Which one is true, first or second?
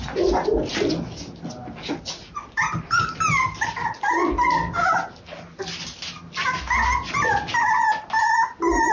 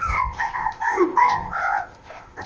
first